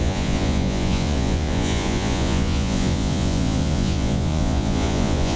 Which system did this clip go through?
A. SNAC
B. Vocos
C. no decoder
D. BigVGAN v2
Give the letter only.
B